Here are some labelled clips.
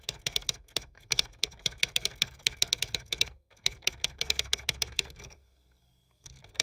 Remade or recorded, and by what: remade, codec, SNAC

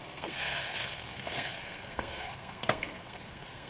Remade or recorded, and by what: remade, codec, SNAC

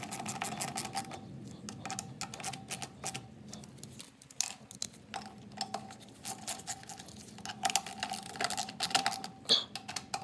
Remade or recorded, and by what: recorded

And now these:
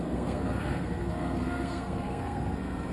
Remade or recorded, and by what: remade, codec, SNAC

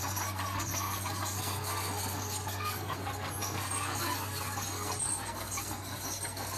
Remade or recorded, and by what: remade, codec, SNAC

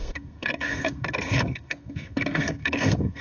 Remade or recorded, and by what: remade, codec, SNAC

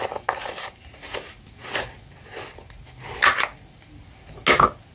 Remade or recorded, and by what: recorded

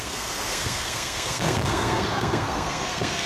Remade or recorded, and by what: remade, codec, SNAC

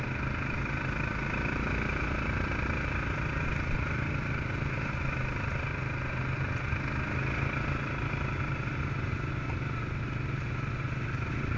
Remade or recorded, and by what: recorded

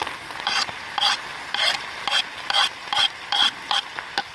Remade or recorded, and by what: recorded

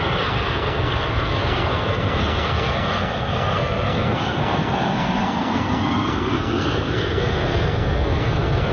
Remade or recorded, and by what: remade, codec, SNAC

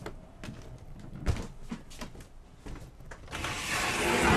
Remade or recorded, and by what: recorded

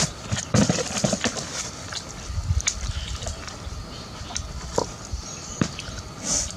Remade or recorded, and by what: recorded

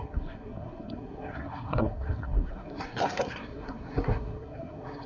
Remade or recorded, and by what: remade, codec, SNAC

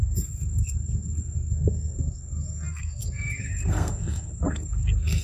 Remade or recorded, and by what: remade, codec, SNAC